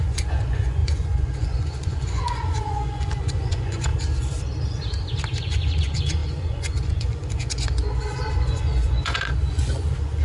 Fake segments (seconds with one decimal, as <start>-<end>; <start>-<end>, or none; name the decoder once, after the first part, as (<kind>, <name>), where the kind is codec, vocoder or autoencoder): 0.0-3.9 (vocoder, Vocos); 5.4-10.2